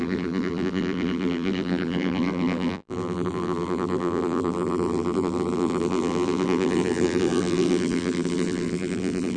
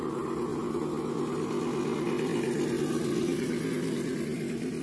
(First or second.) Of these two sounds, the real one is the second